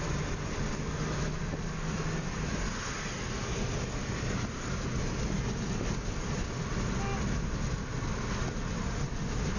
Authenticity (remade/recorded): recorded